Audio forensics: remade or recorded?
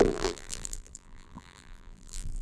remade